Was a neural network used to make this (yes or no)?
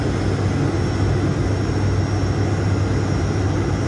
no